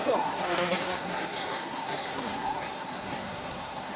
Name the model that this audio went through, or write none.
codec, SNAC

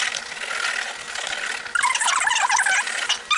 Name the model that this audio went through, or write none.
none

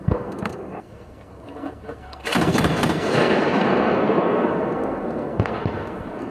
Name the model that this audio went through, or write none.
codec, SNAC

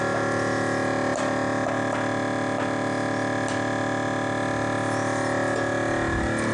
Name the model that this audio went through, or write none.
none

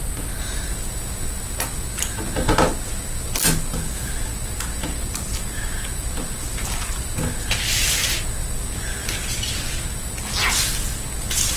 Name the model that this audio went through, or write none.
none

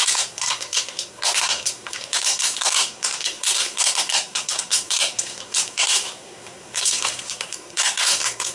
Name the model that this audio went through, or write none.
codec, SNAC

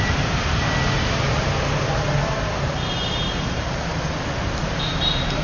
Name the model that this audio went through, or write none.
none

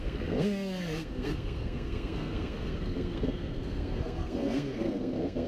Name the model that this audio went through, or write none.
codec, SNAC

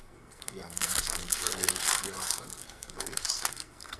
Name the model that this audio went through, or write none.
codec, SNAC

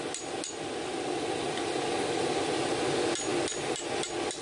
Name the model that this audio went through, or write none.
none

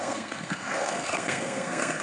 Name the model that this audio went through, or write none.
codec, SNAC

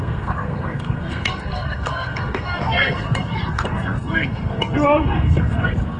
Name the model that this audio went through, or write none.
codec, SNAC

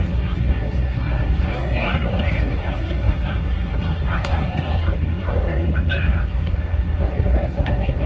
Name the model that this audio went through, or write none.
codec, SNAC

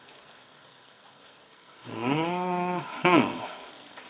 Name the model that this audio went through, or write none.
codec, SNAC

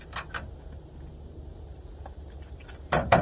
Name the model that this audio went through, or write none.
none